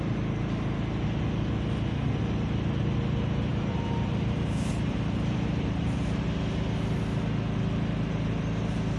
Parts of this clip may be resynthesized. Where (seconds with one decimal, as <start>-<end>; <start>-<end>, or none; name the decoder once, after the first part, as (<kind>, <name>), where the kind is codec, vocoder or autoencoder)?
3.5-6.2 (vocoder, BigVGAN v2)

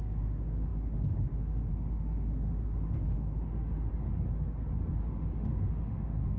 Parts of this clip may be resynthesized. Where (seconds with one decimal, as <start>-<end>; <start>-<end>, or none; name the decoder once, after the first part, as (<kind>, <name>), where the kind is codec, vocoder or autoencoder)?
0.0-3.9 (autoencoder, DAC-VAE); 4.9-6.4

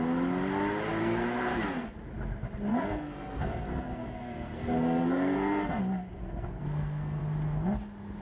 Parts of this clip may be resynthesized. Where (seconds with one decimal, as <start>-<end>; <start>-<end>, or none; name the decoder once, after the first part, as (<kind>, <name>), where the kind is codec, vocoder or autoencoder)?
1.0-1.9 (codec, SNAC); 2.7-5.8; 6.2-7.2

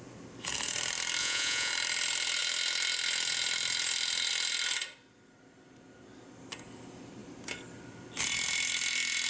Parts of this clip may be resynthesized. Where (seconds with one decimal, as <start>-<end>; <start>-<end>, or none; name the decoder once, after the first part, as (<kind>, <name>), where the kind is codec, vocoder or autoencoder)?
1.2-1.7 (vocoder, Vocos)

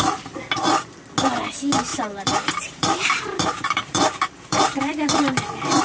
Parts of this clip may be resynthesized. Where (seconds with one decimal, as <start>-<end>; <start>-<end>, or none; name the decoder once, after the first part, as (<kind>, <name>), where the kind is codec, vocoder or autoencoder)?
1.9-5.8 (vocoder, BigVGAN v2)

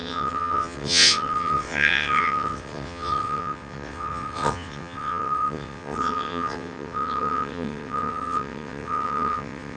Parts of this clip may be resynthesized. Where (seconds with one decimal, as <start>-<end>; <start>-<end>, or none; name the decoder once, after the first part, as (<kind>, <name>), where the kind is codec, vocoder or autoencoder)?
0.0-9.8 (vocoder, WaveNeXt)

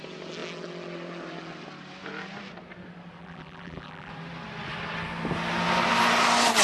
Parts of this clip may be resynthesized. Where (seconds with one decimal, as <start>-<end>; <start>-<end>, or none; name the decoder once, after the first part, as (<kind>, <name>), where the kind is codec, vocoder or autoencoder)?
3.2-4.1 (vocoder, BigVGAN v2)